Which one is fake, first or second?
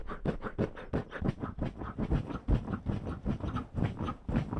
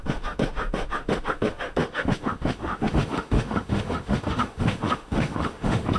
second